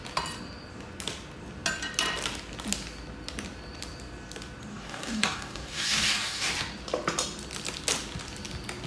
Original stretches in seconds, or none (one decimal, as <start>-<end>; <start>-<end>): 0.0-4.7; 6.5-8.9

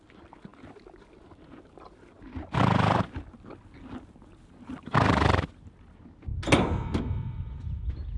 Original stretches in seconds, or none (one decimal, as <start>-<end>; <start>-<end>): 0.0-8.2

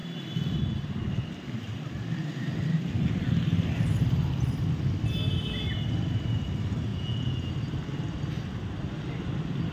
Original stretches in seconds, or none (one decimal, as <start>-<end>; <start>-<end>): 0.0-6.9; 7.5-9.7

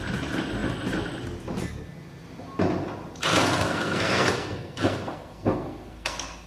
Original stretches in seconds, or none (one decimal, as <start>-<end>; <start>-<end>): 0.0-3.3

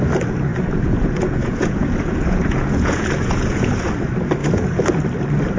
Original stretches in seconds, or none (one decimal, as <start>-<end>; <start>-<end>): 0.0-0.5; 3.9-4.4; 5.0-5.6